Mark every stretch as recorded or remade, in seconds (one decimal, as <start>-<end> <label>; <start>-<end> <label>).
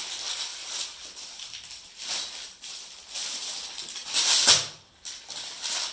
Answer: 0.0-4.0 recorded; 4.0-5.2 remade; 5.2-5.9 recorded